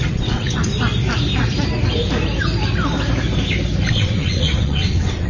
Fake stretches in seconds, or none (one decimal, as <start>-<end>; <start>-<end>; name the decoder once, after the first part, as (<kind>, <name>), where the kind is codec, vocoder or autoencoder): 0.0-0.7 (vocoder, WaveNeXt); 3.9-5.3

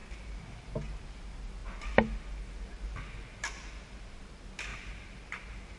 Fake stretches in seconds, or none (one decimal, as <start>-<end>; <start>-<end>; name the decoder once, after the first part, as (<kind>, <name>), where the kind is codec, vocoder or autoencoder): 4.7-5.8 (vocoder, BigVGAN v2)

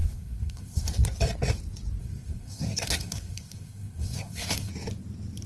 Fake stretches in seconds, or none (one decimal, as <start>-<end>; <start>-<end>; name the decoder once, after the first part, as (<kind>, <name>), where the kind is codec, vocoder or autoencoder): 0.0-0.9 (codec, SNAC); 2.0-4.7

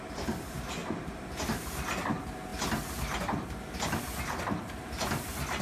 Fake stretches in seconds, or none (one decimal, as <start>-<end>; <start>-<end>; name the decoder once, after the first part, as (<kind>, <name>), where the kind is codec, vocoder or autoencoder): none

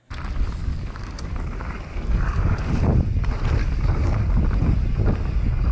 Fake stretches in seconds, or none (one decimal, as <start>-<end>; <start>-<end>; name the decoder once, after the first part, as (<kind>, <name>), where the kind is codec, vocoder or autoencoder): 0.6-2.6 (codec, DAC); 3.6-4.2